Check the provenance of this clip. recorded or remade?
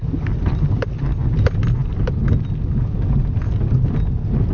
recorded